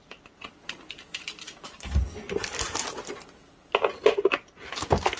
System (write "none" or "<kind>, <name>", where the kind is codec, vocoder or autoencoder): none